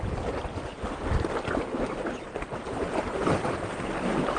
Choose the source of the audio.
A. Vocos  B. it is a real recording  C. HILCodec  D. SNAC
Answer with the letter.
B